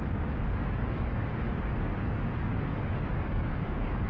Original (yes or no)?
no